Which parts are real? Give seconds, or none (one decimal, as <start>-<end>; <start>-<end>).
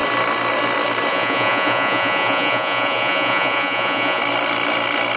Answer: 0.0-1.1; 4.2-5.2